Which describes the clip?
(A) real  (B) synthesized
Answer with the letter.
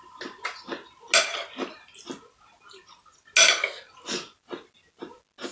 A